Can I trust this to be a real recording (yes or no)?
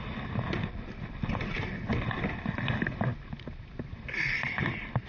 yes